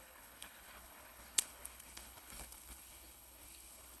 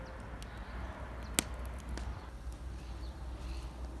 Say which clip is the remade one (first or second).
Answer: first